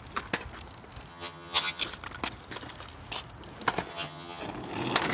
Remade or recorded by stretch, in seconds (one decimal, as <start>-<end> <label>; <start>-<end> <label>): 0.0-1.1 recorded; 1.1-1.8 remade; 1.8-3.9 recorded; 3.9-4.4 remade; 4.4-5.1 recorded